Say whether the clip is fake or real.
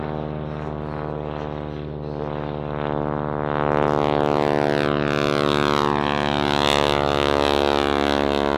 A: real